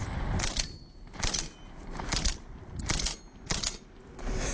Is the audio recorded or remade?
remade